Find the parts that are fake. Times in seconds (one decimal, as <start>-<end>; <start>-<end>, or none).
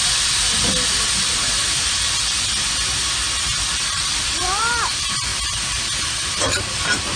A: 0.0-1.6; 3.6-7.2